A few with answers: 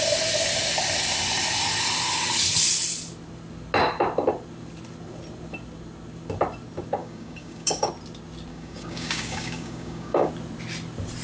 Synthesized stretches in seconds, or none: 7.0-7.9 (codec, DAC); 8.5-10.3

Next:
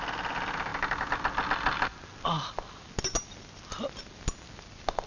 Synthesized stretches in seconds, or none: none

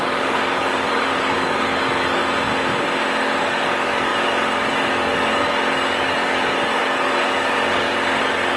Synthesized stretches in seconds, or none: 0.0-2.2 (codec, DAC); 3.2-8.6

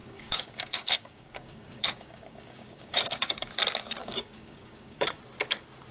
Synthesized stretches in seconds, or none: 0.0-3.5 (codec, DAC); 4.0-5.2

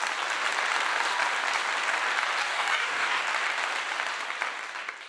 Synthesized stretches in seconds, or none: 2.4-3.2 (codec, DAC)